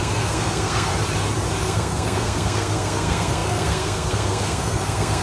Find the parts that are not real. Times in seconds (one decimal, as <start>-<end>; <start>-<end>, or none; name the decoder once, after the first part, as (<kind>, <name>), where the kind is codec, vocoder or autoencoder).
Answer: 0.0-0.9 (codec, SNAC); 1.6-5.2